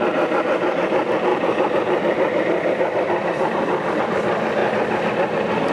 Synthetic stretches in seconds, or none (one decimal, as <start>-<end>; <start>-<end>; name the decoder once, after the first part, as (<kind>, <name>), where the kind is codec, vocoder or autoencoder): 1.3-4.0 (vocoder, BigVGAN v2)